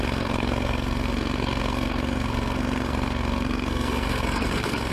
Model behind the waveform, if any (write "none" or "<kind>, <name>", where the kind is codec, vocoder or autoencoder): codec, SNAC